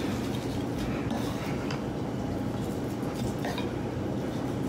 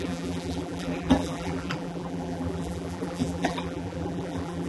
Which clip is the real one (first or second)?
first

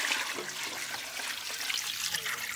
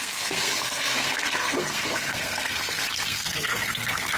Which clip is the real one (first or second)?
first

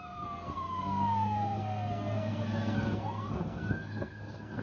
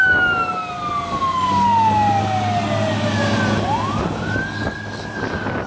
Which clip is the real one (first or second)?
second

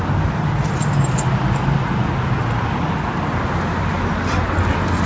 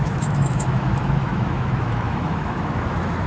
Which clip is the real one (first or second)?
first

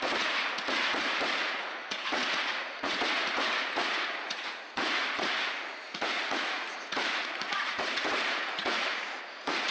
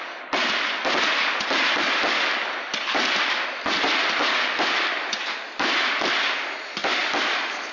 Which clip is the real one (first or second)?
second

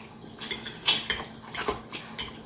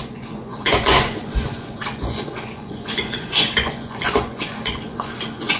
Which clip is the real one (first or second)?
first